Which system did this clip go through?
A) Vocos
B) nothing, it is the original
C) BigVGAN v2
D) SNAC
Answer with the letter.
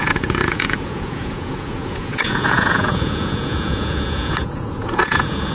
A